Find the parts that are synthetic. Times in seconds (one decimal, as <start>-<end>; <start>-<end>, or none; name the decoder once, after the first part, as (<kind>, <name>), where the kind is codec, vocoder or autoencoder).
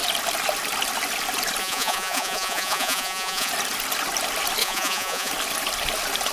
1.6-3.5 (vocoder, Vocos); 4.6-5.3